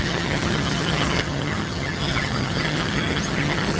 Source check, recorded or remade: remade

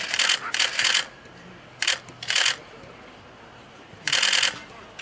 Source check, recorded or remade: recorded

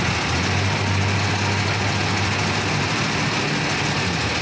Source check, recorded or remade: recorded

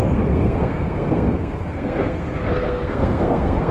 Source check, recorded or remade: remade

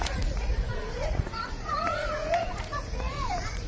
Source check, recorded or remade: remade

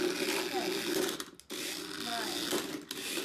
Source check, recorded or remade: recorded